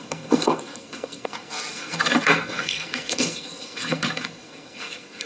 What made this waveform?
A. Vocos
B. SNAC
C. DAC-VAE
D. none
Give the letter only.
B